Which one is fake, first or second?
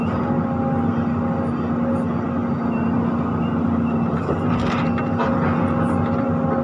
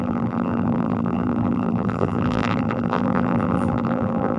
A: second